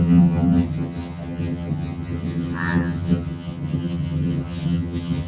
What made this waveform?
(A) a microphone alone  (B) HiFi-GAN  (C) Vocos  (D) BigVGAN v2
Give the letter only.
B